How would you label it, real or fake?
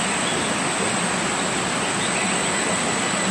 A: real